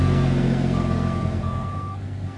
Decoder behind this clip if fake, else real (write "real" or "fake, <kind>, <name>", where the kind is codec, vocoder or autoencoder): fake, codec, SNAC